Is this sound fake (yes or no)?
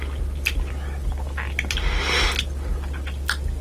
no